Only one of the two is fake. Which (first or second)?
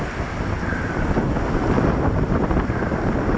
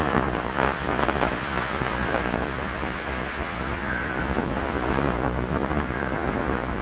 second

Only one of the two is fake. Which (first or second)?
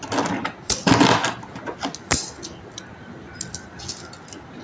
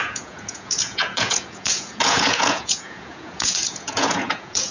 second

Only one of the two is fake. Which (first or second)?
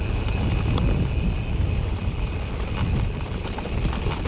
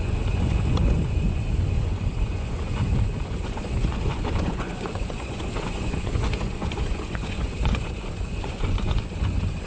second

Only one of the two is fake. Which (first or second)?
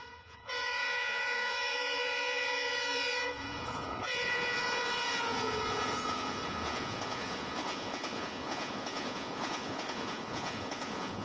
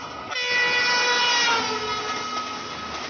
first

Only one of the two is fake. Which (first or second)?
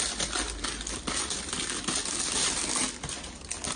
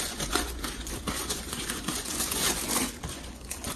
second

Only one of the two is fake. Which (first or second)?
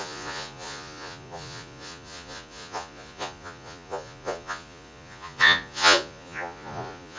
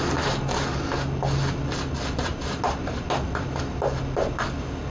first